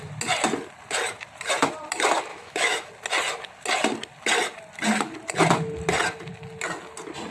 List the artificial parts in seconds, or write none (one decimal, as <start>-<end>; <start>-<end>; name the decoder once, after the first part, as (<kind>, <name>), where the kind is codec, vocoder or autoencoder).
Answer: 2.3-2.9 (autoencoder, DAC-VAE)

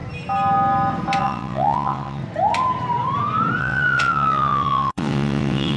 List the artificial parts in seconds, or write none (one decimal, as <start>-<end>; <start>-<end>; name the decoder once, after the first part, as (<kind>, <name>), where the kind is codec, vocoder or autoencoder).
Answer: 1.2-2.2 (vocoder, WaveNeXt); 3.6-5.8

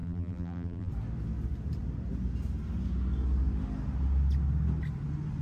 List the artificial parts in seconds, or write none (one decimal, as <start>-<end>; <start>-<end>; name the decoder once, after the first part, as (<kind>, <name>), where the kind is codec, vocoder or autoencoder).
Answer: 0.0-0.9 (vocoder, BigVGAN v2)

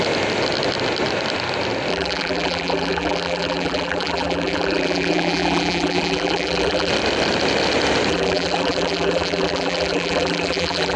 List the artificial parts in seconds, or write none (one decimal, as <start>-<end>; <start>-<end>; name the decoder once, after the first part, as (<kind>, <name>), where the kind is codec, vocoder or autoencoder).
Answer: 1.9-6.9 (vocoder, BigVGAN v2); 8.1-11.0

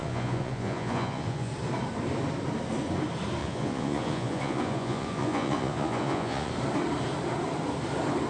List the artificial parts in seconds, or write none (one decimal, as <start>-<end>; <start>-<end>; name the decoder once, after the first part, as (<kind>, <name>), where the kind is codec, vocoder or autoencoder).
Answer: 0.0-1.5 (vocoder, Vocos); 3.4-6.5